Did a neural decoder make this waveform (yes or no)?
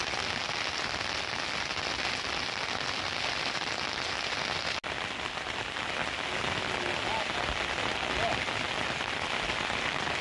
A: no